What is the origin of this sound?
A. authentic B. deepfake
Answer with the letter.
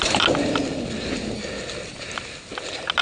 A